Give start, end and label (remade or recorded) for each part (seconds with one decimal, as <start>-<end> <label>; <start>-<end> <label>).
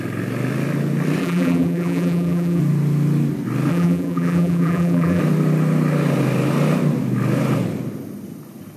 0.0-1.2 recorded; 1.2-2.6 remade; 2.6-3.7 recorded; 3.7-5.2 remade; 5.2-8.8 recorded